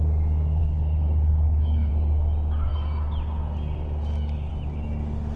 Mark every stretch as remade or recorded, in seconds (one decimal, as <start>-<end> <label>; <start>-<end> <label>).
0.0-0.6 recorded; 0.6-1.9 remade; 1.9-5.4 recorded